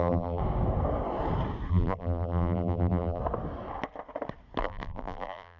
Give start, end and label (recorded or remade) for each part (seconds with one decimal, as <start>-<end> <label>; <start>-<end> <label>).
0.0-0.4 remade; 0.4-1.7 recorded; 1.7-3.2 remade; 3.2-4.6 recorded; 4.6-5.6 remade